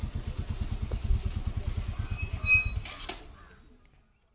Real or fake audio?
real